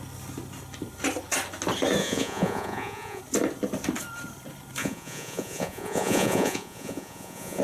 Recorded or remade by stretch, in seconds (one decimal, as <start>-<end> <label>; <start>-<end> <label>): 0.0-2.0 recorded; 2.0-3.2 remade; 3.2-4.8 recorded; 4.8-7.6 remade